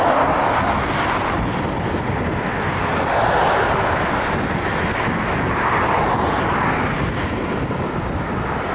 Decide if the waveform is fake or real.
real